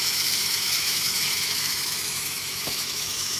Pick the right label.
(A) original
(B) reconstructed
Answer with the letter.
B